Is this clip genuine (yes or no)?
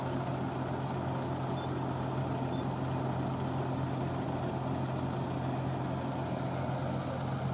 yes